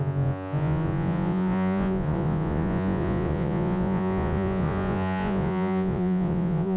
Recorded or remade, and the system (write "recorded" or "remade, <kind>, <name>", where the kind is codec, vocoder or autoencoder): remade, vocoder, Vocos